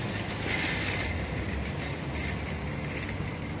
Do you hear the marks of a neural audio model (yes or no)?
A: no